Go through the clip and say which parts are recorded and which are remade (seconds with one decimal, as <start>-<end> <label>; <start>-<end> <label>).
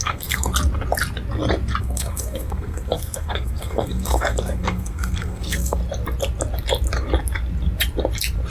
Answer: 0.0-0.5 remade; 0.5-1.8 recorded; 1.8-5.8 remade; 5.8-8.5 recorded